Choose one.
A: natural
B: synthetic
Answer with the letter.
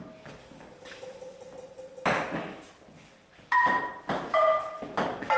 A